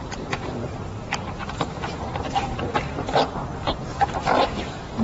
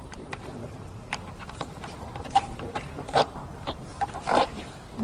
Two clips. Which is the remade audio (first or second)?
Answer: second